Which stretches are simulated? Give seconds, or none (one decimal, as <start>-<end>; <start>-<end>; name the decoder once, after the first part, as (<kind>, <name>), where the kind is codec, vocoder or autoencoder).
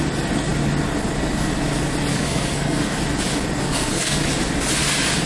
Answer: 2.1-3.0 (codec, SNAC); 3.6-4.2